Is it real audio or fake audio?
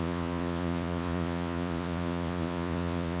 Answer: fake